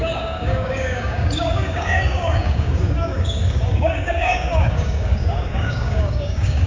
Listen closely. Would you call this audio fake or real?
fake